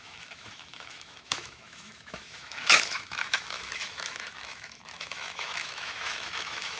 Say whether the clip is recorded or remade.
remade